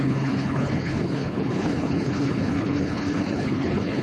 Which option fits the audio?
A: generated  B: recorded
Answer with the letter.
A